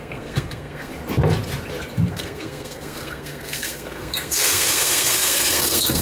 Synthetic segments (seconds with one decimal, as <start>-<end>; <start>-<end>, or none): 0.0-0.9; 2.1-6.0